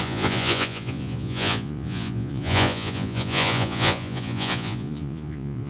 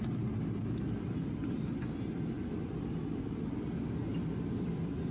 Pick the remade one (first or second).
first